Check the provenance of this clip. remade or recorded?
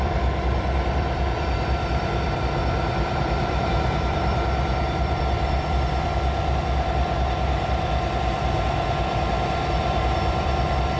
remade